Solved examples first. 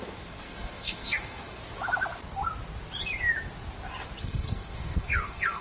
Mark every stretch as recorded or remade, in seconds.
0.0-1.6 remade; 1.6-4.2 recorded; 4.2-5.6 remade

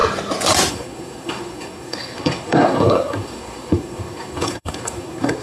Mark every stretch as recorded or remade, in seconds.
0.0-0.7 recorded; 0.7-5.4 remade